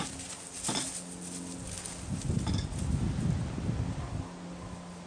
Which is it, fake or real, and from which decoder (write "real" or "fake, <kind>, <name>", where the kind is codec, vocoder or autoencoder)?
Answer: real